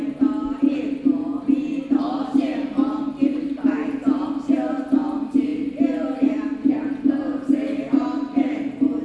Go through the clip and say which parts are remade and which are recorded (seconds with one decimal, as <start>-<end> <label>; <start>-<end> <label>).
0.0-9.0 recorded